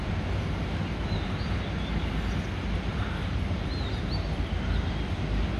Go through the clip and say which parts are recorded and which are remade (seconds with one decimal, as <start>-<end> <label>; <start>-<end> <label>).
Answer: 0.0-2.9 recorded; 2.9-3.9 remade; 3.9-5.6 recorded